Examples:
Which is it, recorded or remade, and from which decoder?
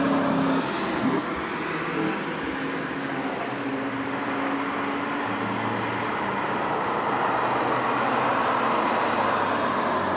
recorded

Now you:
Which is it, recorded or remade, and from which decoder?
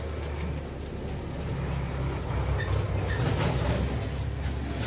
recorded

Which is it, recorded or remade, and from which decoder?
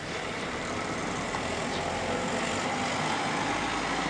recorded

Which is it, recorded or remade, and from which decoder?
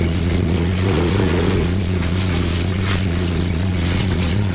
remade, vocoder, Vocos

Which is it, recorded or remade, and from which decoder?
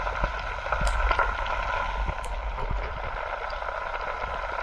recorded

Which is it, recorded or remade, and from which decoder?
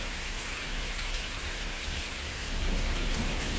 remade, codec, SNAC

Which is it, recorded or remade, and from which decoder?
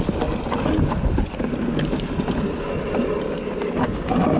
recorded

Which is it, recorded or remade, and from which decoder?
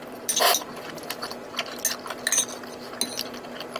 recorded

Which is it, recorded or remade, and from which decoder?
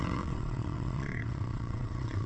remade, vocoder, WaveNeXt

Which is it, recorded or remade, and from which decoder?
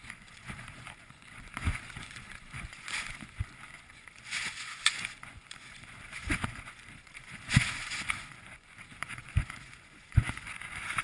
remade, vocoder, Vocos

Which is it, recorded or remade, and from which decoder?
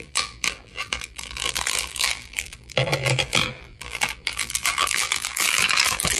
remade, vocoder, BigVGAN v2